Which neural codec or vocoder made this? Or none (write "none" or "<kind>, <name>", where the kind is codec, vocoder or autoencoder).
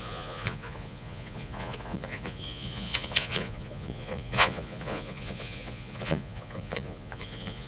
vocoder, Vocos